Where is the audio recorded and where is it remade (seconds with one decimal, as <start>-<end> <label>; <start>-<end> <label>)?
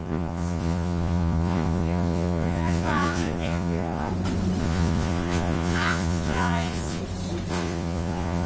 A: 0.0-4.1 remade; 4.1-4.6 recorded; 4.6-7.0 remade; 7.0-7.5 recorded; 7.5-8.5 remade